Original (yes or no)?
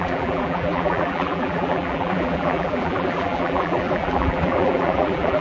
no